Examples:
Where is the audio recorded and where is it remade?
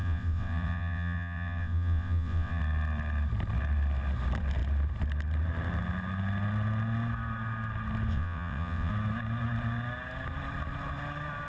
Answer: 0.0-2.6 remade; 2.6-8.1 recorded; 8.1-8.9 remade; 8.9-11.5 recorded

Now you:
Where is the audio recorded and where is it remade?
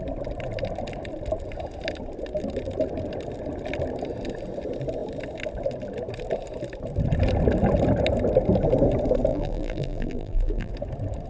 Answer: 0.0-9.3 recorded; 9.3-10.7 remade; 10.7-11.3 recorded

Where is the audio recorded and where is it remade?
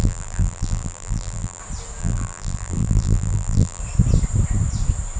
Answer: 0.0-1.6 remade; 1.6-2.0 recorded; 2.0-3.8 remade; 3.8-5.2 recorded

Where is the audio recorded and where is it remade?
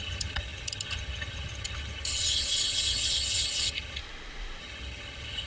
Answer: 0.0-4.0 remade; 4.0-4.6 recorded; 4.6-5.5 remade